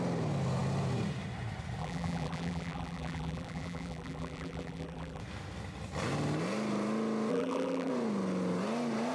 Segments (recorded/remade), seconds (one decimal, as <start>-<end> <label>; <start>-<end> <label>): 0.0-1.8 recorded; 1.8-5.2 remade; 5.2-7.3 recorded; 7.3-7.9 remade; 7.9-9.1 recorded